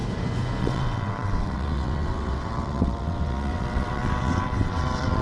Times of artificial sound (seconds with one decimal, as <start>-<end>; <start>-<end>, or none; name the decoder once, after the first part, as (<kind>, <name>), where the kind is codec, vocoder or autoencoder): 0.6-5.2 (vocoder, WaveNeXt)